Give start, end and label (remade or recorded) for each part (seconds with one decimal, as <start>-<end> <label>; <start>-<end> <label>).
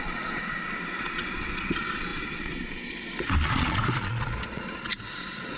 0.0-0.4 remade; 0.4-1.0 recorded; 1.0-5.6 remade